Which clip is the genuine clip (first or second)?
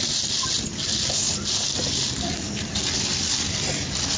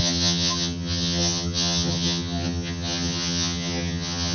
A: first